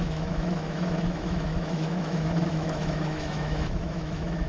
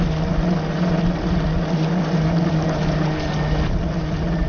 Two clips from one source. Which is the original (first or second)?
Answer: second